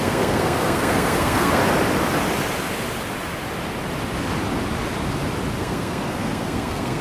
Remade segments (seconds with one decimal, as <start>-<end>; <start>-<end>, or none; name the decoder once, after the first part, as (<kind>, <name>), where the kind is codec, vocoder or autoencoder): 0.0-1.6 (codec, SNAC); 5.6-7.0

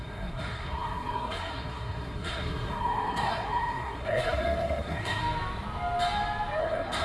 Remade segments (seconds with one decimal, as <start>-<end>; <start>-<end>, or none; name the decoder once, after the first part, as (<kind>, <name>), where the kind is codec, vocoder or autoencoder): 0.0-5.2 (codec, SNAC); 6.6-7.0

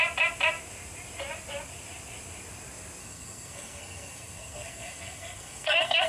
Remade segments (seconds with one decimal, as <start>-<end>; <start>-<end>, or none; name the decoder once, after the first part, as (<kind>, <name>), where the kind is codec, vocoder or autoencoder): 3.0-6.1 (codec, SNAC)

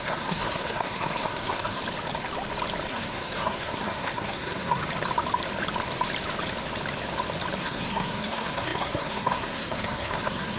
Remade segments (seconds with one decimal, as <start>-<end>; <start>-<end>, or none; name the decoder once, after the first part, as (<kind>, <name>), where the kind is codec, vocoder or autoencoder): 0.0-1.8 (codec, SNAC); 2.9-4.8; 7.6-10.6

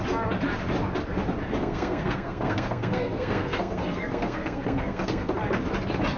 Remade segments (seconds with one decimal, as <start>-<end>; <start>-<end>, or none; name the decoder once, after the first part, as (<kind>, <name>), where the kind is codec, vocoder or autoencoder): 1.6-5.3 (codec, SNAC)

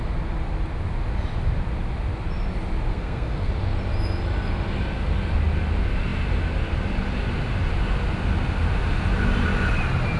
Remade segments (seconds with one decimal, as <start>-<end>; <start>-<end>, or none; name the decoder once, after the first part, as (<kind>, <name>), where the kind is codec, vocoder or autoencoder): 2.9-3.5 (codec, SNAC)